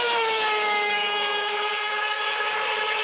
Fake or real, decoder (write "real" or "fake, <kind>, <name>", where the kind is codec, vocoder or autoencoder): fake, autoencoder, DAC-VAE